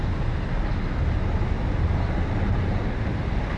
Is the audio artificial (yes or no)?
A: no